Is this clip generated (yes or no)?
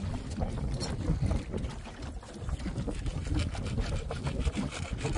no